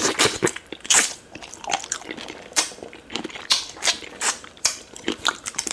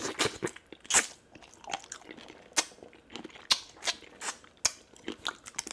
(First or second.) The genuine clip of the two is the second